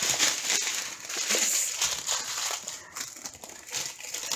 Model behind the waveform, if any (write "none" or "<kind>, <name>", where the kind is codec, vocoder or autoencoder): none